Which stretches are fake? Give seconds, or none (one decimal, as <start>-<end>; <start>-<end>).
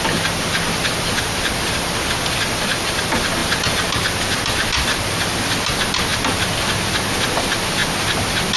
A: none